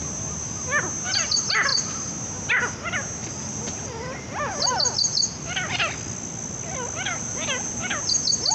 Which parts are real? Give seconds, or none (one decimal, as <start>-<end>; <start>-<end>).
0.0-3.2; 4.6-7.1; 7.8-8.5